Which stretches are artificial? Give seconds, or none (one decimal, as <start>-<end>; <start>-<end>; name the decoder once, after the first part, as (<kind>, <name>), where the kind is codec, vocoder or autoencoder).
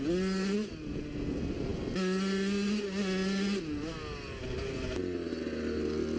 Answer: none